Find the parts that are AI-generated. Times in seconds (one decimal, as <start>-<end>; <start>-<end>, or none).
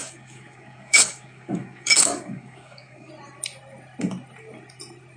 0.0-3.1